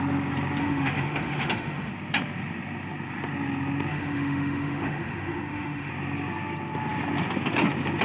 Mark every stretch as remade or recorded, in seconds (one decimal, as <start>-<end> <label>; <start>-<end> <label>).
0.0-0.6 recorded; 0.6-1.9 remade; 1.9-3.9 recorded; 3.9-5.9 remade; 5.9-8.0 recorded